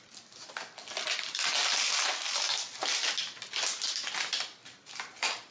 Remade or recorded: recorded